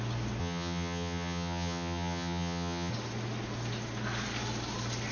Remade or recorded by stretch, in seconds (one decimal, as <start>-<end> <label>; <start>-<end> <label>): 0.0-0.4 recorded; 0.4-2.9 remade; 2.9-5.1 recorded